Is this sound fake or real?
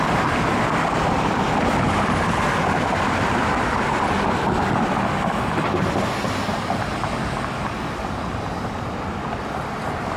fake